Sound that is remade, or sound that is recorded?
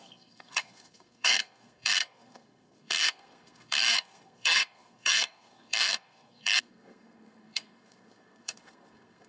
remade